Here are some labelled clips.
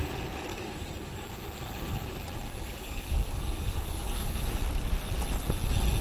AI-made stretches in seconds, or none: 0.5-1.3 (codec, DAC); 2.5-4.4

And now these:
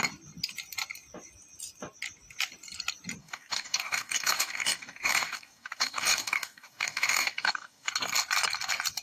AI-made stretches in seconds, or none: 3.2-7.9 (codec, DAC)